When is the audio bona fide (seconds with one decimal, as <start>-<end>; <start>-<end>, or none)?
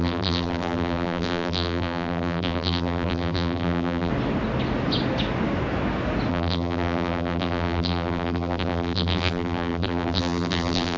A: 4.1-6.3